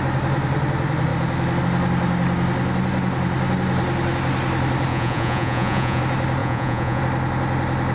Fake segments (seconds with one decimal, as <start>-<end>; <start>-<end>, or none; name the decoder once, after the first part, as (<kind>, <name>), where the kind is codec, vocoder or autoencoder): 4.9-6.0 (vocoder, Vocos); 6.4-7.0